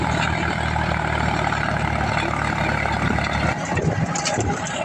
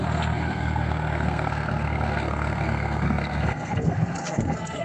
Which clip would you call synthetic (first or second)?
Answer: second